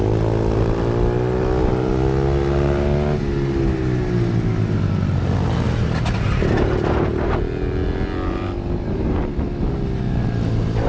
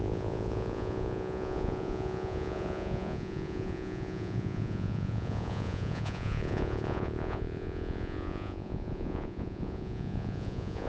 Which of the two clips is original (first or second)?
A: first